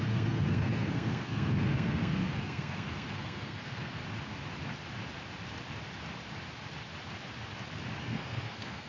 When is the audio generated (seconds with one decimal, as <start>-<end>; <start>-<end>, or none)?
0.0-4.0; 8.0-8.9